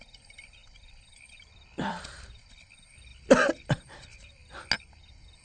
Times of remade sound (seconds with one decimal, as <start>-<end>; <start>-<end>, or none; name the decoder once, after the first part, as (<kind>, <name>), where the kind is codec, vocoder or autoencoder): 0.6-2.5 (vocoder, BigVGAN v2); 3.1-3.7

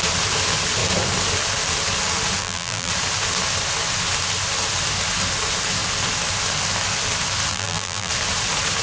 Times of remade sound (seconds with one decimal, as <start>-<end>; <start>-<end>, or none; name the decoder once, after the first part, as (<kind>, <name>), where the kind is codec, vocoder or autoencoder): 2.4-2.9 (vocoder, BigVGAN v2); 7.5-8.1

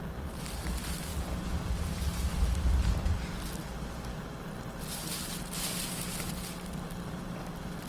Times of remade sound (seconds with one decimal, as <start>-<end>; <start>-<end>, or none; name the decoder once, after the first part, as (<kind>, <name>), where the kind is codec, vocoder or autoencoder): none

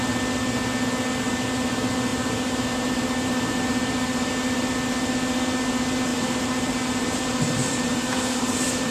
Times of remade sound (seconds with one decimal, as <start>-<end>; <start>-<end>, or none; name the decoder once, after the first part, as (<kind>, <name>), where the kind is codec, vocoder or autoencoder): 2.1-4.3 (vocoder, BigVGAN v2); 6.1-8.9

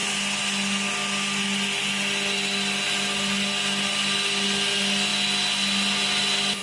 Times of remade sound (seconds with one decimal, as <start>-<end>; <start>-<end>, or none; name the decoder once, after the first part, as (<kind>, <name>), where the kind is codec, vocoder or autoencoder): none